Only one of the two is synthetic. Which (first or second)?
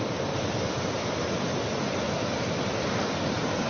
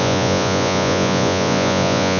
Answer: second